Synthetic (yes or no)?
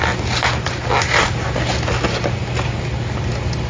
no